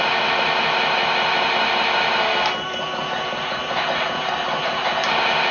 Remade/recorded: recorded